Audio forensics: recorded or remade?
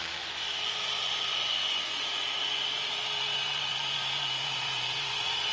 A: remade